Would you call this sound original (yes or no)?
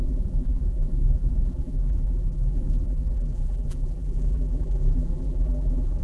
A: no